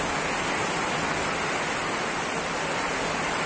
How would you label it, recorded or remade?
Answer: recorded